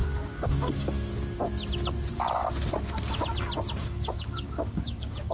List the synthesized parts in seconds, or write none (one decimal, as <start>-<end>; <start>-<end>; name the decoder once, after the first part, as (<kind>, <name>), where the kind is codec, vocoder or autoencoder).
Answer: 0.0-1.1 (codec, DAC); 3.8-5.3